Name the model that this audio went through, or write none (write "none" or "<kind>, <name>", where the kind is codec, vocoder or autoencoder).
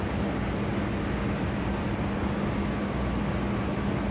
none